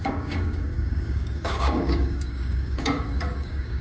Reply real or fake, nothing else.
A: fake